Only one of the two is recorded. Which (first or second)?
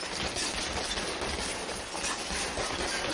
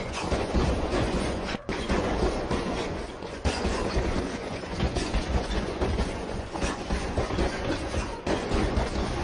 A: first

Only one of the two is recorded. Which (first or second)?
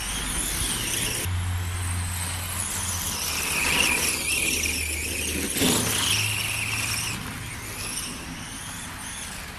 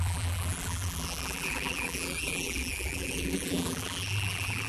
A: first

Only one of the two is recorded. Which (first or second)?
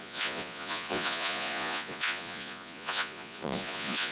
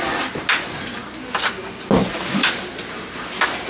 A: second